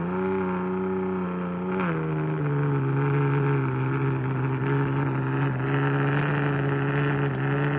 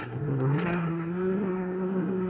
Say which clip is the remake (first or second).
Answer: second